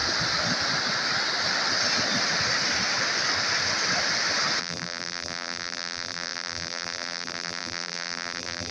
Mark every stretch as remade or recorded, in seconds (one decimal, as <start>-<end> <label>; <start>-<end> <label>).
0.0-4.6 recorded; 4.6-8.7 remade